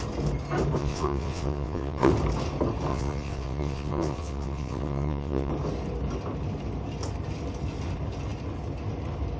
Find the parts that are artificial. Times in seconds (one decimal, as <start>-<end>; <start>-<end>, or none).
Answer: 0.8-2.1; 2.9-5.5